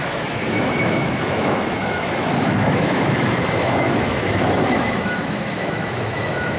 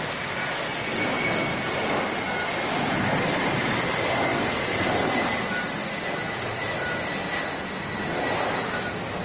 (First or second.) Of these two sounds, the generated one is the first